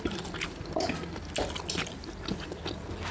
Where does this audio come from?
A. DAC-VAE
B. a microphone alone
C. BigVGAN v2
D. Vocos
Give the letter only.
B